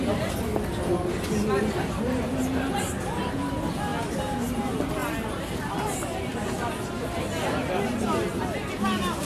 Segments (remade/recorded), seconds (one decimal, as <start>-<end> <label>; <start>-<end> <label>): 0.0-9.2 recorded